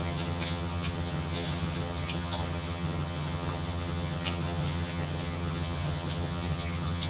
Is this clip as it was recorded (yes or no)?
no